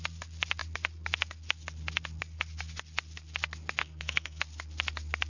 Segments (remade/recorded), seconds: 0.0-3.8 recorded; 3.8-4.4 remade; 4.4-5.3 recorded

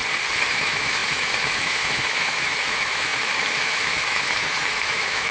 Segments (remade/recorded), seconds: 0.0-0.5 recorded; 0.5-5.3 remade

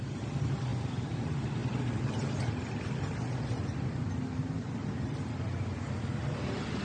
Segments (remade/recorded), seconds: 0.0-6.8 recorded

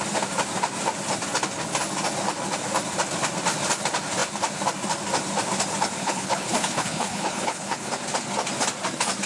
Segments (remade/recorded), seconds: 0.0-6.0 recorded; 6.0-7.9 remade; 7.9-9.3 recorded

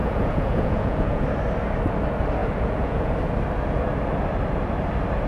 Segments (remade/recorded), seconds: 0.0-1.2 remade; 1.2-2.4 recorded; 2.4-3.1 remade; 3.1-5.3 recorded